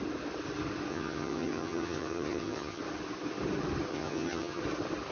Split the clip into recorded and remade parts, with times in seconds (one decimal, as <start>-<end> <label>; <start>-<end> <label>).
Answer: 0.0-0.9 recorded; 0.9-2.8 remade; 2.8-3.9 recorded; 3.9-4.6 remade; 4.6-5.1 recorded